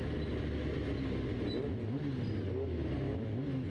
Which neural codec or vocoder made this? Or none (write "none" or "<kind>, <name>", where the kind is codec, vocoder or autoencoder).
none